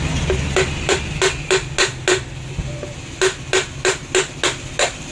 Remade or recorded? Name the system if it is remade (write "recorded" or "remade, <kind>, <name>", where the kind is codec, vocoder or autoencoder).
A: recorded